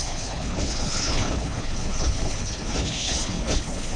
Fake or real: fake